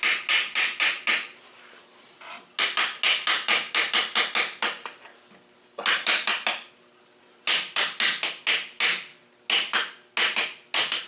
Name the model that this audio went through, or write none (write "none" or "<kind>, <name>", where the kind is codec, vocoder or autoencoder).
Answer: none